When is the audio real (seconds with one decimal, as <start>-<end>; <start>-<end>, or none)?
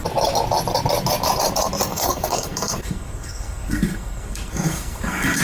0.0-1.9